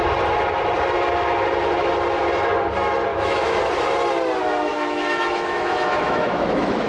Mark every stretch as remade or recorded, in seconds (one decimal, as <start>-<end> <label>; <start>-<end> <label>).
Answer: 0.0-3.1 recorded; 3.1-3.6 remade; 3.6-4.7 recorded; 4.7-6.9 remade